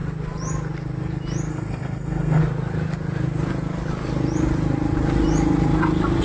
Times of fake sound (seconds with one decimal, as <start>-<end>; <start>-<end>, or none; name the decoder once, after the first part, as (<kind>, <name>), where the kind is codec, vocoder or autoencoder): 1.5-2.4 (codec, SNAC)